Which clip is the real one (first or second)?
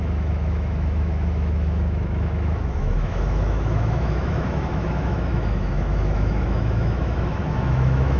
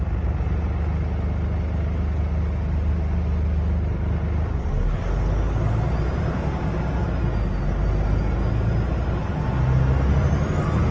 second